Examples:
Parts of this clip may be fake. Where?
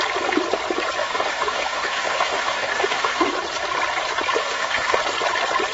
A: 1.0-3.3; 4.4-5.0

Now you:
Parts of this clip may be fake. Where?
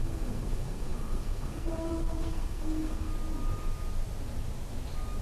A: 0.0-3.1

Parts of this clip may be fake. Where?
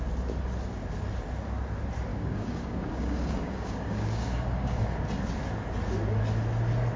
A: 2.1-5.0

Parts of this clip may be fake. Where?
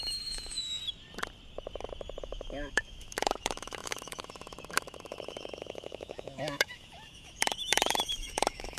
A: 0.0-0.8; 2.2-8.8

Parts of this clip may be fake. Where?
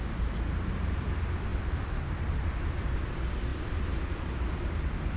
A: 1.5-2.9; 3.5-4.6